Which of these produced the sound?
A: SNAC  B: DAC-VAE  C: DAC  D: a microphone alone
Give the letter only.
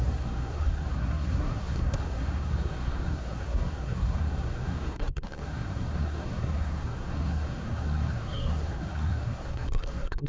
A